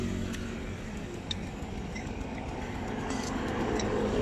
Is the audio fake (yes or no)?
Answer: yes